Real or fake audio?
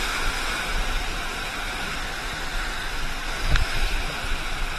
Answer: fake